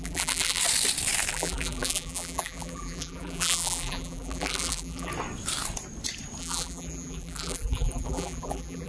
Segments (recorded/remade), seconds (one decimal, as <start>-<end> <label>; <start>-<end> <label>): 0.0-0.6 remade; 0.6-1.3 recorded; 1.3-5.1 remade; 5.1-6.4 recorded; 6.4-8.9 remade